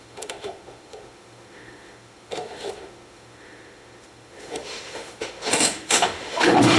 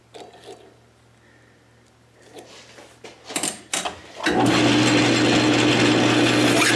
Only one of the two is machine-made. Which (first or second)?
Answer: first